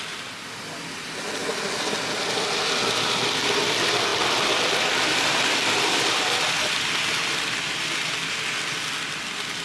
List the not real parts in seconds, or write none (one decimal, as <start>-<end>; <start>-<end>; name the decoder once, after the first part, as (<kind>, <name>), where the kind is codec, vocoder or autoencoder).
none